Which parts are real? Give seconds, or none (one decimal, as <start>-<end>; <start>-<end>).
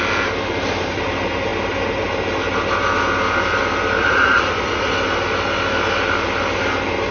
0.0-4.0; 4.9-7.1